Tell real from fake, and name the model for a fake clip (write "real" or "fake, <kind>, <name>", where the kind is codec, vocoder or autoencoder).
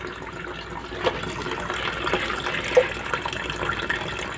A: real